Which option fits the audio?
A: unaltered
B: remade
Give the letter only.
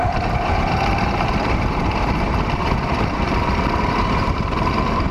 B